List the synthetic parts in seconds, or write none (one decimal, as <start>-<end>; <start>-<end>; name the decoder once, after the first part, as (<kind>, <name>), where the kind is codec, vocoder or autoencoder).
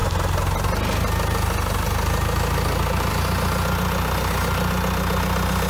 none